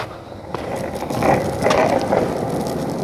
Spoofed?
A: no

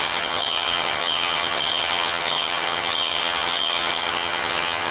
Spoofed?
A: yes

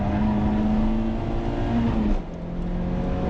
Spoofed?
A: no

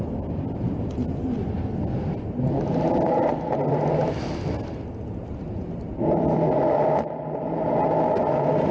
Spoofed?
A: no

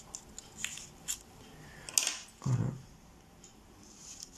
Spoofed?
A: no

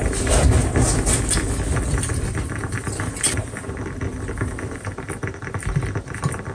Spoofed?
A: no